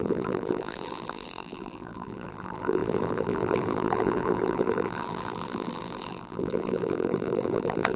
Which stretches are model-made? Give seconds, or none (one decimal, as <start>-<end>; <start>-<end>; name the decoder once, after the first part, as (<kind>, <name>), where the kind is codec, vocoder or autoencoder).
0.0-8.0 (vocoder, BigVGAN v2)